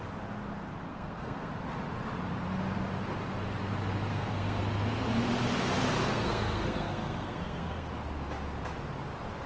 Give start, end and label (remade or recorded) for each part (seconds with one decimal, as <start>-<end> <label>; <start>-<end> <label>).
0.0-0.9 recorded; 0.9-1.5 remade; 1.5-4.1 recorded; 4.1-4.6 remade; 4.6-6.1 recorded; 6.1-7.9 remade; 7.9-9.5 recorded